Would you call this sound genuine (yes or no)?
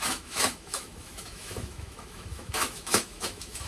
no